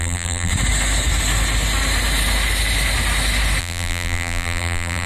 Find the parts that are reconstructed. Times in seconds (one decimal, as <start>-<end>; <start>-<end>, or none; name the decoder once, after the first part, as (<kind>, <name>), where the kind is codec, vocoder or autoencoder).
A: 0.0-0.5 (vocoder, BigVGAN v2); 3.6-5.1